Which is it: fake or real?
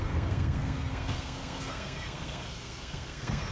fake